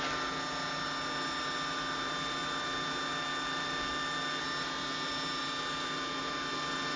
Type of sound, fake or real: real